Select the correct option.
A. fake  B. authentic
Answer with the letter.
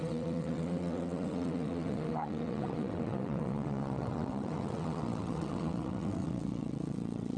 A